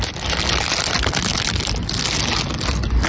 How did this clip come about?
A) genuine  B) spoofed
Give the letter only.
A